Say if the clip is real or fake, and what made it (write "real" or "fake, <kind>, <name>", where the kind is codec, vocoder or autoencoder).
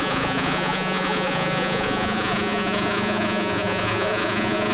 fake, vocoder, Vocos